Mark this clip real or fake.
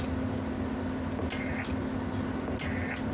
real